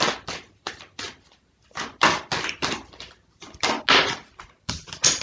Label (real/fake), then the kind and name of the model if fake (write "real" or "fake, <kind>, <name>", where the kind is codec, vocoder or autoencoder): real